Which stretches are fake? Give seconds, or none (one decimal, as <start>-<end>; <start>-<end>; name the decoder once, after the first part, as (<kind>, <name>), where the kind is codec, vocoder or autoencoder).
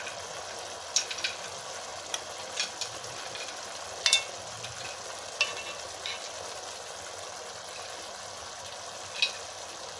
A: none